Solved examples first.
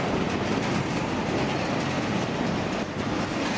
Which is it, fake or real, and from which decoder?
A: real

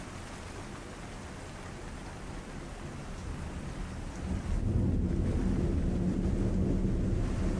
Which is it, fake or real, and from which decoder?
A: real